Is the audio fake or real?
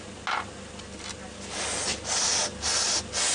real